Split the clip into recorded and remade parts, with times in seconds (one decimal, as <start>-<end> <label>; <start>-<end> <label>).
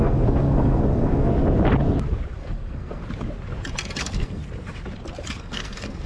0.0-1.3 remade; 1.3-2.4 recorded; 2.4-3.0 remade; 3.0-4.0 recorded; 4.0-4.4 remade; 4.4-5.4 recorded; 5.4-6.1 remade